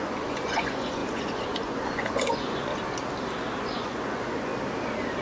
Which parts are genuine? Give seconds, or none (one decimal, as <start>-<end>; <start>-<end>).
2.7-3.6; 4.5-5.2